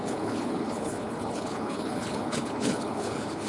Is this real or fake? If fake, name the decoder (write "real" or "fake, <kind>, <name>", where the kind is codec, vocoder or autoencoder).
fake, codec, HILCodec